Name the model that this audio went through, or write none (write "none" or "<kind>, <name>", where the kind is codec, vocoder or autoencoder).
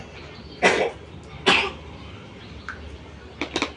none